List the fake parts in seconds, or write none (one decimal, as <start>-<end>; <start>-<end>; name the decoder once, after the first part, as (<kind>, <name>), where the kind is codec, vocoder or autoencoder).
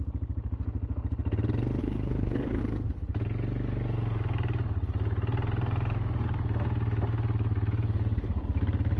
1.8-2.6 (codec, HILCodec)